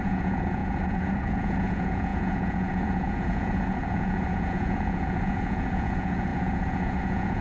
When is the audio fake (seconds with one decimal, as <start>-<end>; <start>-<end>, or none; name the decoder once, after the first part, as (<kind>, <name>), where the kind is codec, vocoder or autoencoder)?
0.0-7.4 (vocoder, Vocos)